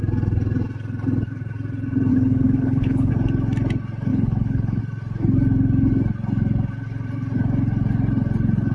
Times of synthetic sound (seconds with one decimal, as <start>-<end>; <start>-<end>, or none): 2.1-3.1; 4.1-4.8